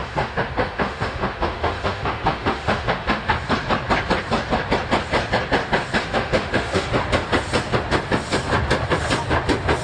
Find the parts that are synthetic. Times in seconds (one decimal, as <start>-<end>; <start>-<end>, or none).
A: 0.0-3.3; 6.0-6.9